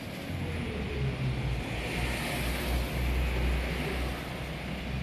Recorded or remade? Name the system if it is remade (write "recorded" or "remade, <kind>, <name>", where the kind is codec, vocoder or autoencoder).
recorded